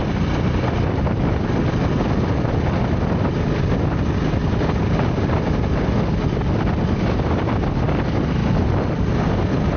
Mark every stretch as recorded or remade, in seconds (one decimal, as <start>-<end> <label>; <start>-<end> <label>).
0.0-9.8 recorded